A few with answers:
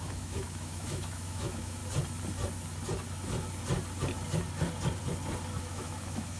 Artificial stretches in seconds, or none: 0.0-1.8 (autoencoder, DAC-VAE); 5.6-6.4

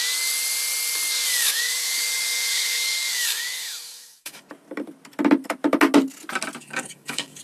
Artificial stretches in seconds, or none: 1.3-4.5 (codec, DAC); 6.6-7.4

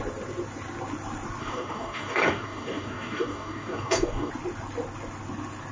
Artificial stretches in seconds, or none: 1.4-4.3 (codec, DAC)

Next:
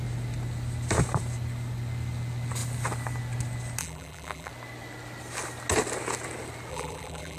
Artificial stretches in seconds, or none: 3.8-4.5 (vocoder, BigVGAN v2); 6.7-7.4